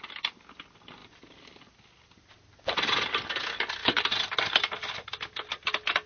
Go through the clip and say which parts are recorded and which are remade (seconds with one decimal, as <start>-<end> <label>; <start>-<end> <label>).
0.0-3.8 recorded; 3.8-5.5 remade; 5.5-6.1 recorded